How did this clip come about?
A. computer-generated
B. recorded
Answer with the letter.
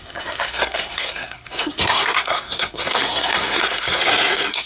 A